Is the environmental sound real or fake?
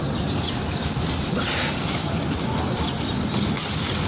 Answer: real